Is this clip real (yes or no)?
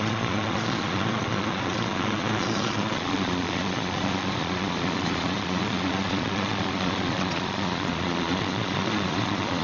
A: no